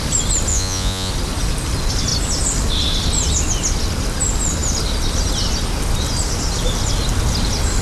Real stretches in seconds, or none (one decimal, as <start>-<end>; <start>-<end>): 0.0-0.5; 1.1-7.8